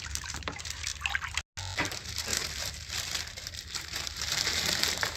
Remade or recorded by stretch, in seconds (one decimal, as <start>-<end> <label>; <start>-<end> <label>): 0.0-0.9 remade; 0.9-1.6 recorded; 1.6-5.2 remade

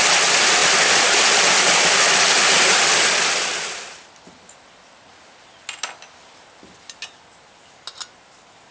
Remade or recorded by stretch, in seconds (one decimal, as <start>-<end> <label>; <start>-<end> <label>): 0.0-0.6 recorded; 0.6-1.9 remade; 1.9-8.7 recorded

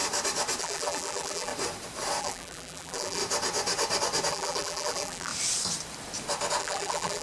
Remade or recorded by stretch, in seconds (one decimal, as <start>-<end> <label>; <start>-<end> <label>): 0.0-0.6 recorded; 0.6-1.5 remade; 1.5-2.2 recorded; 2.2-3.2 remade; 3.2-4.3 recorded; 4.3-5.3 remade; 5.3-6.6 recorded; 6.6-7.2 remade

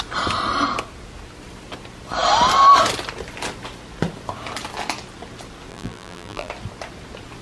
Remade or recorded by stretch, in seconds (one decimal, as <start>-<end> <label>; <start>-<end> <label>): 0.0-5.7 recorded; 5.7-6.5 remade; 6.5-7.4 recorded